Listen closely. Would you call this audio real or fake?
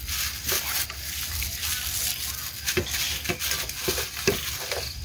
real